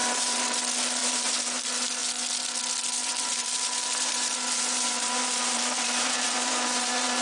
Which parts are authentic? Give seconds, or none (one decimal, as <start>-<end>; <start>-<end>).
0.6-1.0; 1.6-3.0